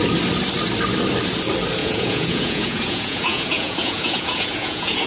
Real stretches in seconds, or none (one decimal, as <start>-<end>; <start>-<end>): 0.0-1.8